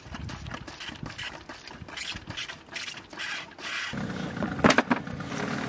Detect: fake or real real